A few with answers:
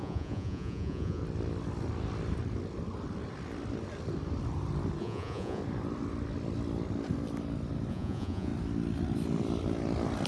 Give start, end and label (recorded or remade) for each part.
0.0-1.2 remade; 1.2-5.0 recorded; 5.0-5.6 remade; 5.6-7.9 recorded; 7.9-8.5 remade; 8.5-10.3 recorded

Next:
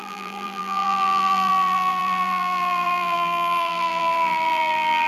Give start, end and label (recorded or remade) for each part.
0.0-5.1 remade

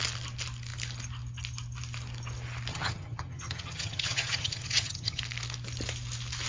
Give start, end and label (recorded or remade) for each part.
0.0-2.7 recorded; 2.7-5.2 remade; 5.2-6.5 recorded